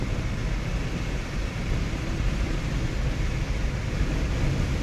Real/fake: real